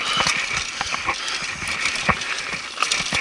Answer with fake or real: real